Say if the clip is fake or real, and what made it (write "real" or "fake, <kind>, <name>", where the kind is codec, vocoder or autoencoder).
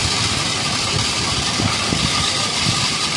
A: real